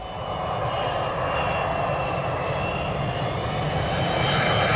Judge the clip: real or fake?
real